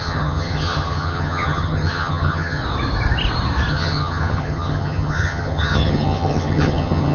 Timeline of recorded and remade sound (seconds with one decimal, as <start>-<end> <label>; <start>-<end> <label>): 0.0-2.6 remade; 2.6-3.7 recorded; 3.7-7.1 remade